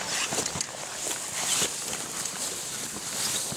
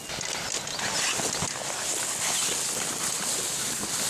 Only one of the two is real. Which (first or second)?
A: second